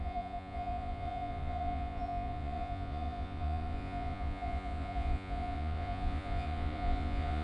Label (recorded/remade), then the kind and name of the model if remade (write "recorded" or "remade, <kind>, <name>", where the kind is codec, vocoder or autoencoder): remade, vocoder, Vocos